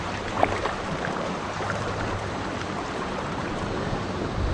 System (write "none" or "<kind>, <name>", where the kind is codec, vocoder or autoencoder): vocoder, BigVGAN v2